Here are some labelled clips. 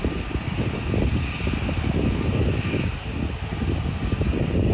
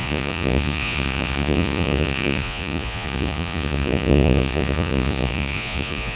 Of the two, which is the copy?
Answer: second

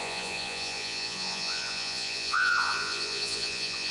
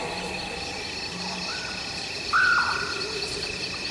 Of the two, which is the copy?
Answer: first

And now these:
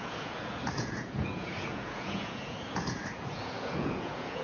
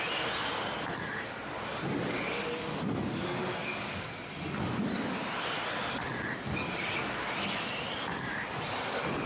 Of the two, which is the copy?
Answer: first